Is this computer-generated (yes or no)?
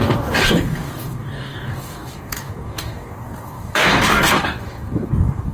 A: yes